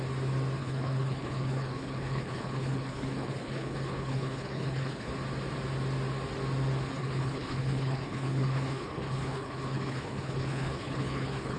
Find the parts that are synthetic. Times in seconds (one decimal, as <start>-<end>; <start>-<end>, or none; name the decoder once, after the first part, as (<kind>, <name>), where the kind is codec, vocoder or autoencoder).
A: 0.6-5.1 (codec, HILCodec); 7.0-11.6